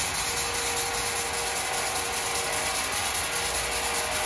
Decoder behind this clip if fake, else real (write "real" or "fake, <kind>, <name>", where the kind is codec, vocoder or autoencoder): real